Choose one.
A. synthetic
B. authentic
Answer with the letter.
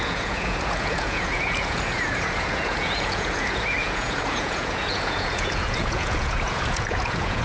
A